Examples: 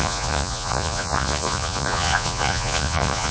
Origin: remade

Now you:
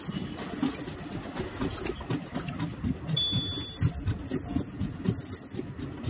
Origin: recorded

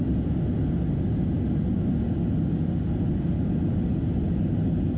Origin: recorded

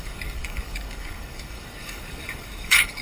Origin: remade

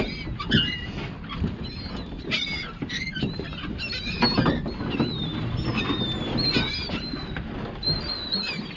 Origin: recorded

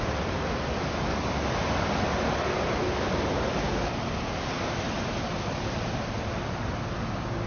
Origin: recorded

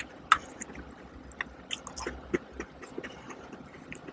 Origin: recorded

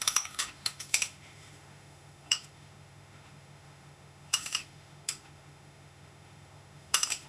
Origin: remade